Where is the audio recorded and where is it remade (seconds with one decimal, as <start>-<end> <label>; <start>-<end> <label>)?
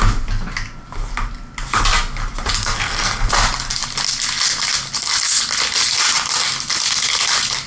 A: 0.0-2.6 recorded; 2.6-3.3 remade; 3.3-7.7 recorded